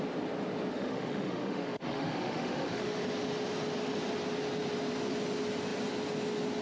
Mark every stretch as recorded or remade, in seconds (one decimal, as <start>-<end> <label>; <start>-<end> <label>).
0.0-0.7 recorded; 0.7-3.0 remade; 3.0-6.6 recorded